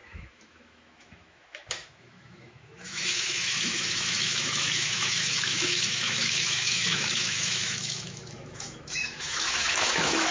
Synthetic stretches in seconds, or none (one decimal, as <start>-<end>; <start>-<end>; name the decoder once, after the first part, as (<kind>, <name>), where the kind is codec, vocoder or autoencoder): 0.0-10.3 (autoencoder, DAC-VAE)